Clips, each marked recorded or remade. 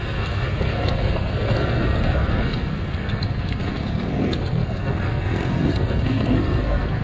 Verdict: remade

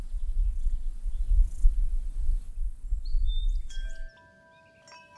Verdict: recorded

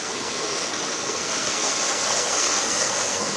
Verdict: remade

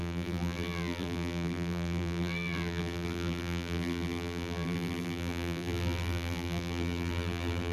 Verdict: remade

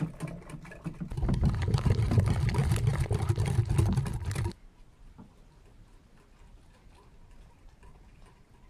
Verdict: recorded